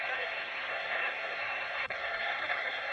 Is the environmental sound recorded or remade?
remade